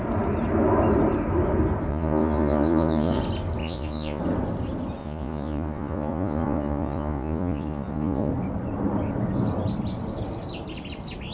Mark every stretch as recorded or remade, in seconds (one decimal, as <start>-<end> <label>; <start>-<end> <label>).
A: 0.0-1.9 recorded; 1.9-3.2 remade; 3.2-3.6 recorded; 3.6-4.2 remade; 4.2-5.0 recorded; 5.0-8.3 remade; 8.3-11.3 recorded